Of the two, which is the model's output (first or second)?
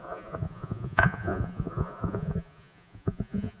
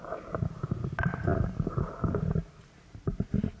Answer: first